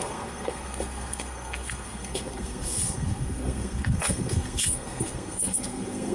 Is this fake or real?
fake